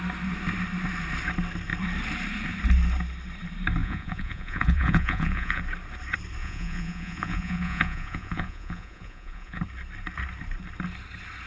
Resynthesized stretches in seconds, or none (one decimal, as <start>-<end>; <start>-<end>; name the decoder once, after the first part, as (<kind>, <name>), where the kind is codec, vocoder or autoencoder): 3.8-5.6 (vocoder, Vocos); 6.4-9.6